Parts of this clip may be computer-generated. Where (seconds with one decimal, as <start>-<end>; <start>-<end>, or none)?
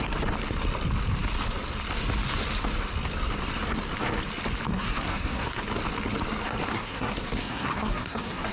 4.7-5.6; 6.7-8.5